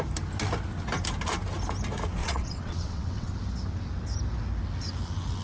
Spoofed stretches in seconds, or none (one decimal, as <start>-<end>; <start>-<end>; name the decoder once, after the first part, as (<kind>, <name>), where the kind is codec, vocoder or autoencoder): 2.2-3.3 (vocoder, WaveNeXt)